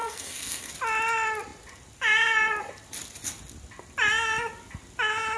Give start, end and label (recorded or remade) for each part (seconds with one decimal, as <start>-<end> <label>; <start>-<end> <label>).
0.0-0.7 remade; 0.7-5.4 recorded